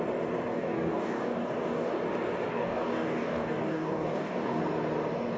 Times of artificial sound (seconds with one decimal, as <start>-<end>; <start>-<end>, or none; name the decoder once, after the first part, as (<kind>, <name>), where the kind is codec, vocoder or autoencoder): 0.5-2.0 (codec, DAC); 2.5-4.6